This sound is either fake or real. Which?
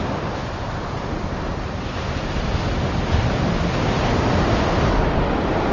real